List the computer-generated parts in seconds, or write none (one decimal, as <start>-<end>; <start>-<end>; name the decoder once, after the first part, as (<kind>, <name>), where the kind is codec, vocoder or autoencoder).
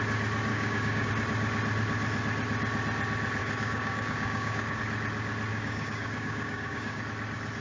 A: 0.5-1.1 (codec, DAC); 3.4-4.8; 5.5-7.0